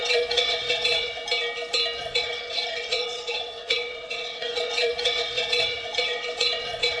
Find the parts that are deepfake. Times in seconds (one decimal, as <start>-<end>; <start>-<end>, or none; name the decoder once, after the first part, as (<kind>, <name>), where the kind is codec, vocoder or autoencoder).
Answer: 0.0-1.2 (vocoder, WaveNeXt); 2.0-7.0